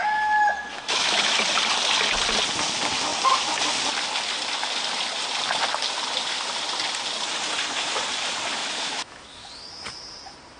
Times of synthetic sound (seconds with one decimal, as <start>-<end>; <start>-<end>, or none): 0.7-1.4; 8.6-9.5